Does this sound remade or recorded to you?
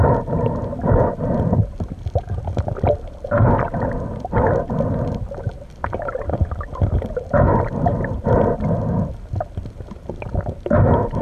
recorded